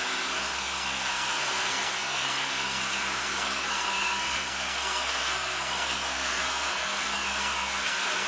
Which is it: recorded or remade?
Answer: remade